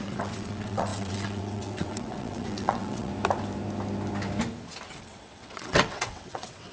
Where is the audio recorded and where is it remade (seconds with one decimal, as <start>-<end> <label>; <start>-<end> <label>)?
0.0-3.1 remade; 3.1-5.0 recorded; 5.0-6.7 remade